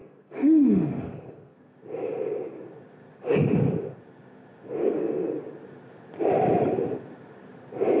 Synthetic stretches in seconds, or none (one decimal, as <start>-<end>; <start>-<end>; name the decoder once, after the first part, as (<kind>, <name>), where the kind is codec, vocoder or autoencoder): 0.0-1.7 (codec, SNAC); 4.8-5.3